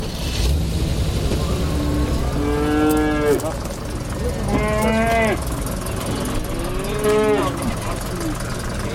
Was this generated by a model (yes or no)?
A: no